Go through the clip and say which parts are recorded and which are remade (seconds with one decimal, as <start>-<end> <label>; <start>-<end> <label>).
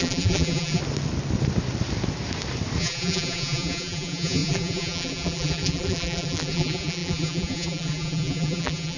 0.0-0.8 remade; 0.8-2.8 recorded; 2.8-9.0 remade